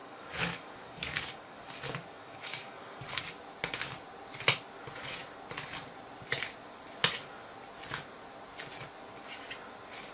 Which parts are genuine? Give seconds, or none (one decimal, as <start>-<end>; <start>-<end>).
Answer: 3.2-10.1